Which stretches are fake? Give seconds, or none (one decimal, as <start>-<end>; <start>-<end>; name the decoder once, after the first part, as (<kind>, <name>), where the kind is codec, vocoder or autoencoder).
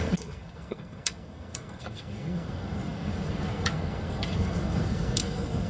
0.0-5.7 (codec, SNAC)